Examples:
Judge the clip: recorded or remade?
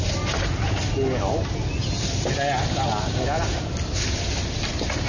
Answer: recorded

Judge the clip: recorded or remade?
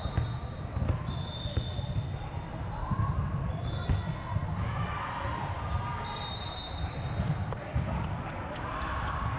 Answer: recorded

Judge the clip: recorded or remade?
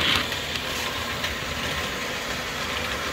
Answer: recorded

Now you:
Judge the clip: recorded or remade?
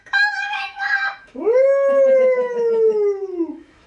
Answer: remade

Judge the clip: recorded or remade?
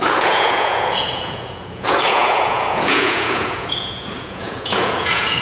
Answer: remade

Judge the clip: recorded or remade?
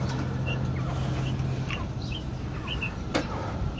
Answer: recorded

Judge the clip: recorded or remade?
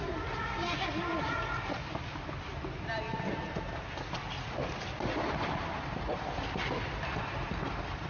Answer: recorded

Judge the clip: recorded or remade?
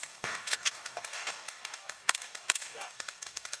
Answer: remade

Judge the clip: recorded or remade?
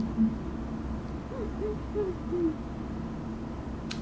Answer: recorded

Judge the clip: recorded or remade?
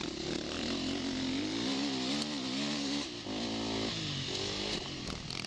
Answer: recorded